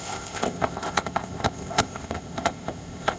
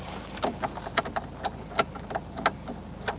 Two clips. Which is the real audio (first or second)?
second